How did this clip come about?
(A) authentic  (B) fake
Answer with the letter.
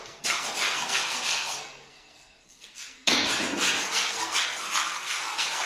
B